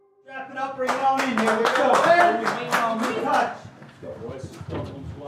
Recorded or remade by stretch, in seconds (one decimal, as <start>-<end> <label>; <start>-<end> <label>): 0.0-3.5 recorded; 3.5-4.2 remade; 4.2-5.3 recorded

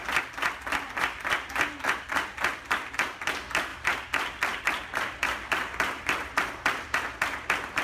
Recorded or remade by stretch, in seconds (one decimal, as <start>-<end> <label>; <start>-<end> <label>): 0.0-7.8 recorded

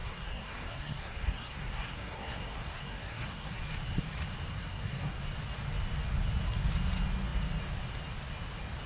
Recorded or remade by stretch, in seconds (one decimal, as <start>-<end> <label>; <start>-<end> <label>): 0.0-3.6 remade; 3.6-4.5 recorded; 4.5-5.2 remade; 5.2-8.9 recorded

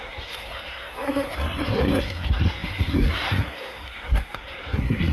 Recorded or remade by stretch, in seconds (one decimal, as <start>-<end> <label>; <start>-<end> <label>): 0.0-5.1 remade

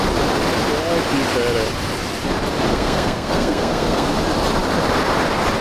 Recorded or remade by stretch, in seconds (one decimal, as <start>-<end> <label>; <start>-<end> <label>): 0.0-2.7 recorded; 2.7-4.1 remade; 4.1-5.6 recorded